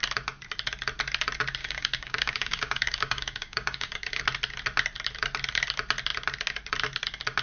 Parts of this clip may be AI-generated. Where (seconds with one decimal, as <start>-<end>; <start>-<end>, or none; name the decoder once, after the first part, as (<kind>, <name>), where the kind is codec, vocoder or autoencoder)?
1.6-4.2 (codec, DAC)